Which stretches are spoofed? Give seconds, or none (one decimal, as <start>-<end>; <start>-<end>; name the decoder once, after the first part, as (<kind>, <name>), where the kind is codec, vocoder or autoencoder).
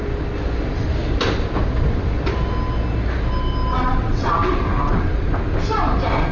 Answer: 3.7-5.3 (vocoder, WaveNeXt)